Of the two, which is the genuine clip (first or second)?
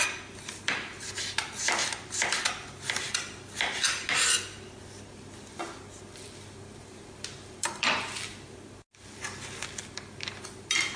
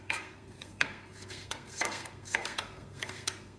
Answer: first